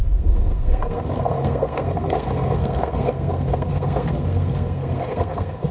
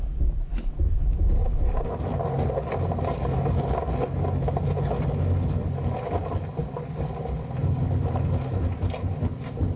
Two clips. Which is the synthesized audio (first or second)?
first